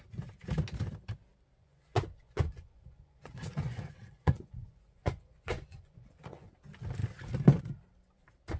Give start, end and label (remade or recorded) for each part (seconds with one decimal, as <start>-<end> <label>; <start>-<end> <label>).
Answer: 0.0-1.6 recorded; 1.6-6.5 remade; 6.5-8.6 recorded